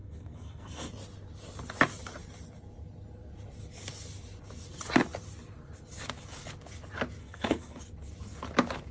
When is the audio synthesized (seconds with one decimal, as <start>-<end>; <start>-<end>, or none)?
0.0-0.9; 7.2-7.8